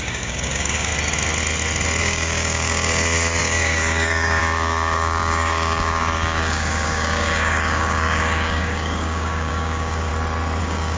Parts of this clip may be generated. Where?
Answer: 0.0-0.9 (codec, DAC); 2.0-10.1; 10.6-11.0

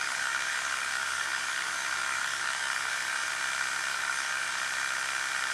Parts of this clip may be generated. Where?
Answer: 0.0-3.3 (codec, DAC); 3.9-4.6

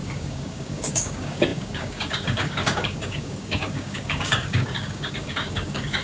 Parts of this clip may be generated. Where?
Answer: 0.0-6.0 (codec, DAC)

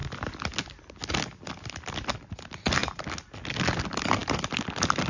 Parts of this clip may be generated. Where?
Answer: none